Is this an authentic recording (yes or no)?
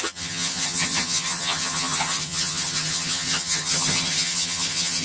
no